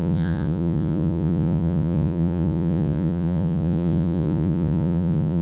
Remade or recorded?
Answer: remade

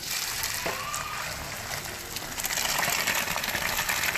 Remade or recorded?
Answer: recorded